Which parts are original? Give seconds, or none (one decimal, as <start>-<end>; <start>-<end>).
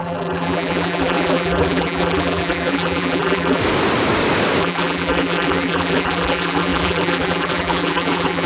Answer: 3.6-4.6